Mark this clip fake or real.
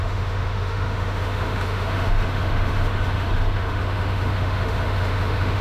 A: fake